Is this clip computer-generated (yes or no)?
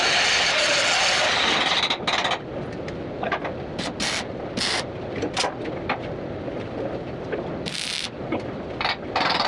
no